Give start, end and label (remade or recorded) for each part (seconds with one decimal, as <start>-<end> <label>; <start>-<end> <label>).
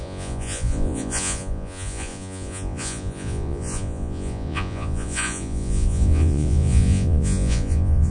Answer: 0.0-8.1 remade